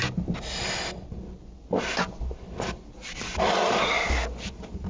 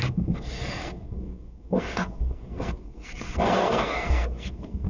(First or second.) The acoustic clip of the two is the first